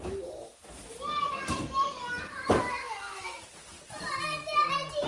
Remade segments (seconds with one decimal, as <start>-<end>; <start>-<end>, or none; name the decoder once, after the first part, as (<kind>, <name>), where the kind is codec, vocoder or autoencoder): 2.8-3.4 (autoencoder, DAC-VAE)